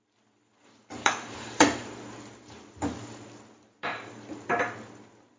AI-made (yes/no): yes